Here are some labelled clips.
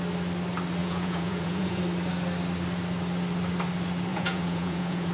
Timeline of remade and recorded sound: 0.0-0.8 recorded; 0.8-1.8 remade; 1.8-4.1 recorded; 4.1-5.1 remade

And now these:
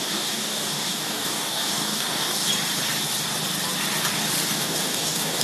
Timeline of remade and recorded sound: 0.0-2.5 remade; 2.5-4.6 recorded; 4.6-5.4 remade

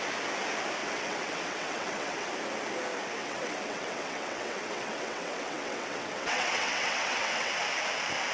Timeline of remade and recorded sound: 0.0-0.8 recorded; 0.8-2.3 remade; 2.3-3.2 recorded; 3.2-7.5 remade; 7.5-8.3 recorded